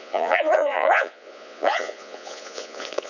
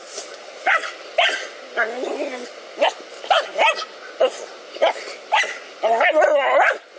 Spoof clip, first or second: first